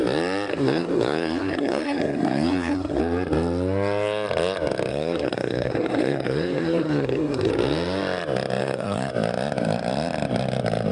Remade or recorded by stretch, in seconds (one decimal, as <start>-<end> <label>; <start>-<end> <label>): 0.0-0.5 recorded; 0.5-3.0 remade; 3.0-4.9 recorded; 4.9-7.5 remade; 7.5-8.6 recorded; 8.6-9.1 remade; 9.1-10.9 recorded